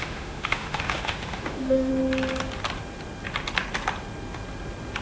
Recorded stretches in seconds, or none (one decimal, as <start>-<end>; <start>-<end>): 1.9-5.0